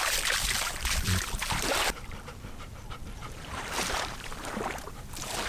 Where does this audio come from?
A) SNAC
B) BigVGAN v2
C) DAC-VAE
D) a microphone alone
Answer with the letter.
B